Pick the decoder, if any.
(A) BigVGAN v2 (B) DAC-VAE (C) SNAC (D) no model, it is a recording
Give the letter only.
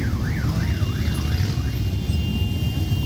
D